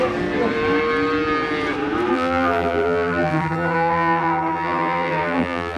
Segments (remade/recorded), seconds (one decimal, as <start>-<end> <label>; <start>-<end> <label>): 0.0-2.1 recorded; 2.1-5.8 remade